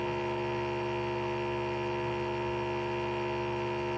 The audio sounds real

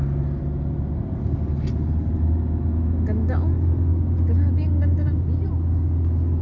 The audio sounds real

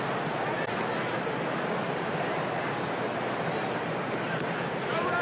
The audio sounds real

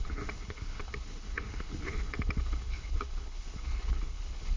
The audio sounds fake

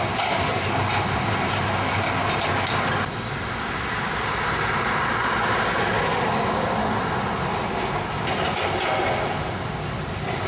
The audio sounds real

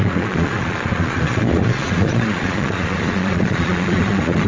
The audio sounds fake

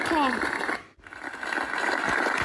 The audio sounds real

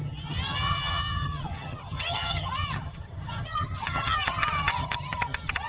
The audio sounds fake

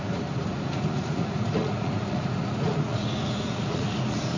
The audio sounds fake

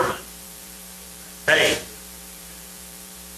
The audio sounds fake